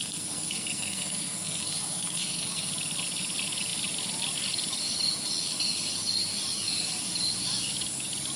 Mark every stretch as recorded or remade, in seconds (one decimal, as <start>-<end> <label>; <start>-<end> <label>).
0.0-2.7 remade; 2.7-8.4 recorded